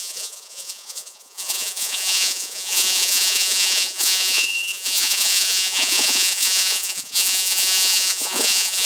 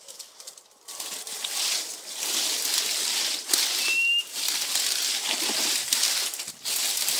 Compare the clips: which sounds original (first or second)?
second